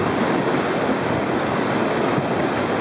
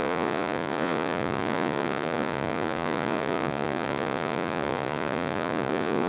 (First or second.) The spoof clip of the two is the second